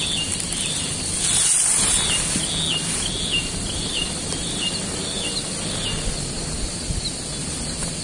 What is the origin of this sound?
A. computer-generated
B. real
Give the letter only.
B